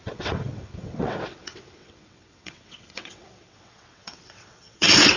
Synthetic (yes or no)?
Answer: yes